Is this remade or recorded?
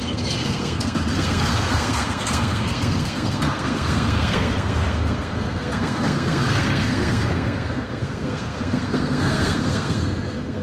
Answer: remade